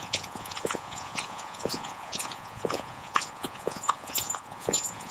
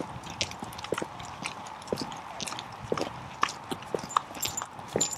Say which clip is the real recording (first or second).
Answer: second